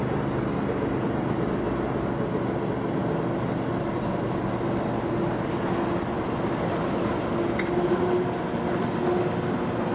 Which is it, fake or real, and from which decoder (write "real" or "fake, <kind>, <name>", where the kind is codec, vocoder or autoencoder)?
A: real